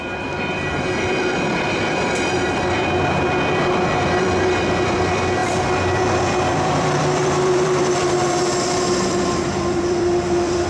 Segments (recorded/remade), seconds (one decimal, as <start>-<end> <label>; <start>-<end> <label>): 0.0-10.7 remade